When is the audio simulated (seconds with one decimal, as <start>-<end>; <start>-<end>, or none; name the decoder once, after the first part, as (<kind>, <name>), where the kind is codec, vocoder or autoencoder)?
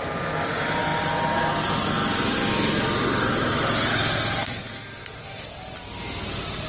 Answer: none